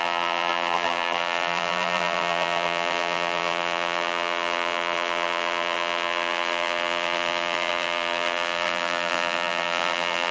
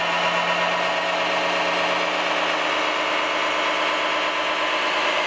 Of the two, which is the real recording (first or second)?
second